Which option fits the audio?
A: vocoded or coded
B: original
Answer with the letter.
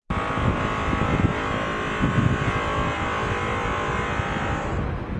B